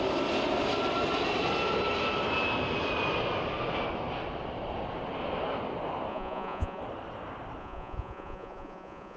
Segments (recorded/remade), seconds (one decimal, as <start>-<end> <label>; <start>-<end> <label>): 0.0-6.1 recorded; 6.1-6.8 remade; 6.8-7.6 recorded; 7.6-9.2 remade